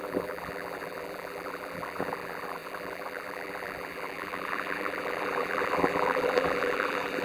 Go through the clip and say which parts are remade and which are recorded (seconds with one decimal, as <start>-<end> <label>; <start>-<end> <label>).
0.0-7.2 remade